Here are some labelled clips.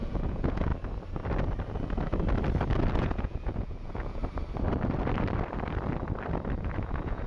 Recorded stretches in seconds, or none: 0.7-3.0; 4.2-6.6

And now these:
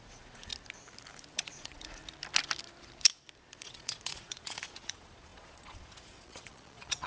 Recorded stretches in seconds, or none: 0.5-1.3; 2.0-3.5

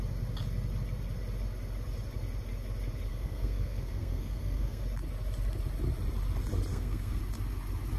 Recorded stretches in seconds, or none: 0.0-3.1; 4.8-6.7; 7.2-8.0

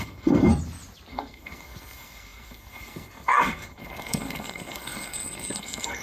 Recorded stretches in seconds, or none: 0.5-1.1

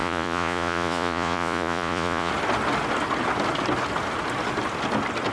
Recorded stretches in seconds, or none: 2.3-5.3

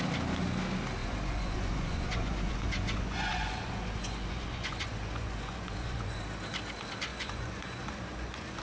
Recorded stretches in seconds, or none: 0.0-1.0; 6.2-7.1

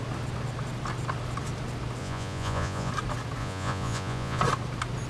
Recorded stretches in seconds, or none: 0.0-2.0; 2.9-3.4; 4.4-5.1

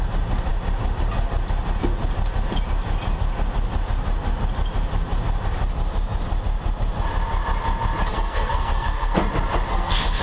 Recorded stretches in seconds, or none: 0.0-8.1; 9.2-9.7